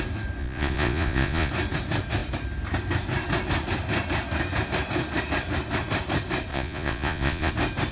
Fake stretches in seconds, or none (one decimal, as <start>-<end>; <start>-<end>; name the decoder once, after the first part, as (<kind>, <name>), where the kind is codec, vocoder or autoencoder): 0.4-1.5 (vocoder, Vocos); 6.5-7.5